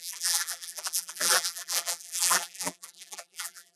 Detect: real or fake fake